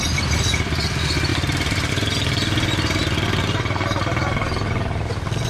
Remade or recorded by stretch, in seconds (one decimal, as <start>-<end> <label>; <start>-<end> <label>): 0.0-1.3 recorded; 1.3-1.9 remade; 1.9-5.5 recorded